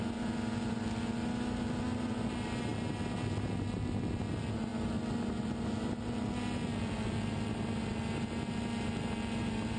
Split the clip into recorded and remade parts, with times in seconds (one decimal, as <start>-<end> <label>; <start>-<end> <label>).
0.0-9.8 recorded